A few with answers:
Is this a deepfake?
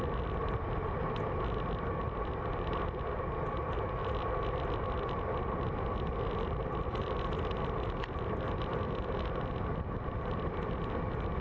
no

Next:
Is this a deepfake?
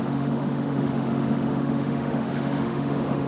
yes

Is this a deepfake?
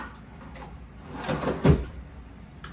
no